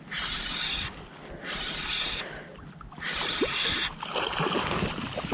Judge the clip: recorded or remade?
recorded